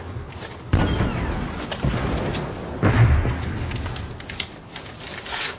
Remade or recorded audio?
recorded